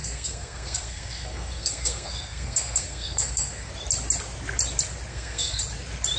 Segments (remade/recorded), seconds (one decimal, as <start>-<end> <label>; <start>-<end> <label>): 0.0-3.7 remade; 3.7-5.1 recorded; 5.1-5.6 remade; 5.6-6.2 recorded